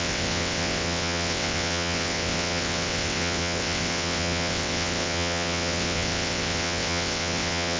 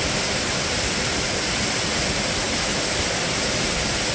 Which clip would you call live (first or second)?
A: second